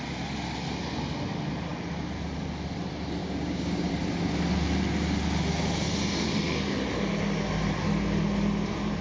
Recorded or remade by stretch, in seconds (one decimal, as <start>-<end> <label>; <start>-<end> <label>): 0.0-3.2 recorded; 3.2-3.9 remade; 3.9-9.0 recorded